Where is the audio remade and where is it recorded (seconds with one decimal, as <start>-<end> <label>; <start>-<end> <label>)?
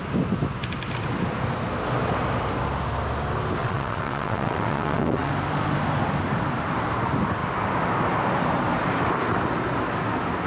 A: 0.0-3.6 recorded; 3.6-5.3 remade; 5.3-10.5 recorded